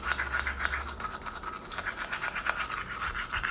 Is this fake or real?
real